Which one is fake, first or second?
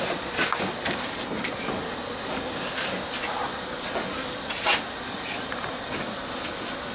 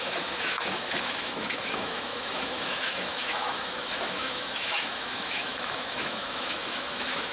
second